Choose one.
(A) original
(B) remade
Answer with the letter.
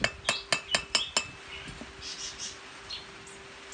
A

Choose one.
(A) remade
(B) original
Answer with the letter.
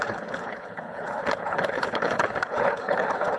A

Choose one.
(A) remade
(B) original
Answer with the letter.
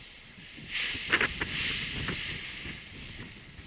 B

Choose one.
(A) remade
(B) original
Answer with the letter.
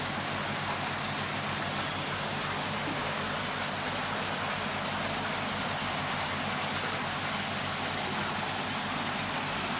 B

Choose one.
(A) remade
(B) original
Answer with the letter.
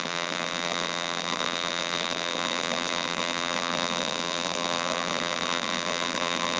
A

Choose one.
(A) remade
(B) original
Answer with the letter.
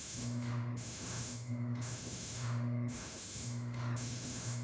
A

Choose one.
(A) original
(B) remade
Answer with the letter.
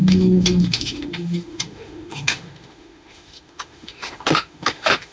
B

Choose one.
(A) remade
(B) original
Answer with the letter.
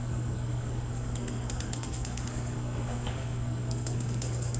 A